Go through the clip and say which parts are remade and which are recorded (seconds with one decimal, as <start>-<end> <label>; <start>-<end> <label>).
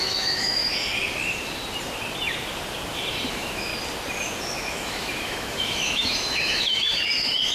0.0-0.6 remade; 0.6-3.3 recorded; 3.3-3.7 remade; 3.7-4.4 recorded; 4.4-7.5 remade